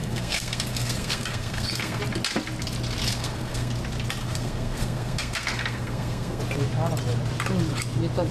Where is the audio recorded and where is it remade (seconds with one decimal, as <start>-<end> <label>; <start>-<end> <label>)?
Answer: 0.0-2.0 remade; 2.0-3.1 recorded; 3.1-3.7 remade; 3.7-4.2 recorded; 4.2-6.4 remade; 6.4-8.3 recorded